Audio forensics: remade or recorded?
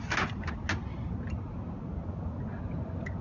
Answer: recorded